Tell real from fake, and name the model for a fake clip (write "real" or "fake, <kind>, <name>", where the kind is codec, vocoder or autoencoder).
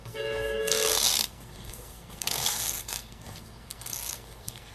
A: fake, codec, SNAC